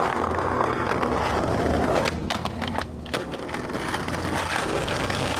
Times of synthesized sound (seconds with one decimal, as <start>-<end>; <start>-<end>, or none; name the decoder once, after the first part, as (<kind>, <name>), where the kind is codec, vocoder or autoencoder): 0.0-0.9 (codec, SNAC); 2.2-3.4; 4.6-5.4